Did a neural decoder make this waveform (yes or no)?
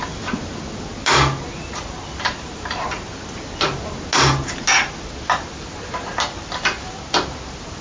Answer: no